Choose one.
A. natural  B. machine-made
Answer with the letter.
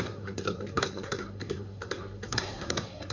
B